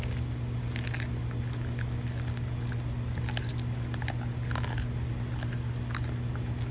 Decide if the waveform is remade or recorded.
recorded